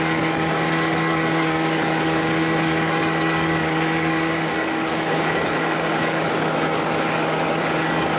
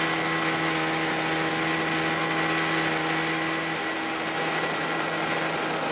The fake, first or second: first